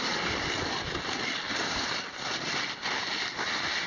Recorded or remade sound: recorded